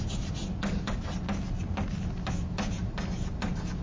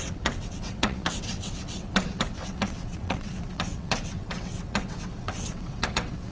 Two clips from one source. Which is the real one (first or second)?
first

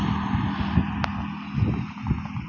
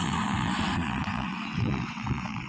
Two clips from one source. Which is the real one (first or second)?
first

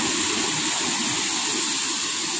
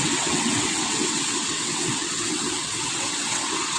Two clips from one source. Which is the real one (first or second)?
first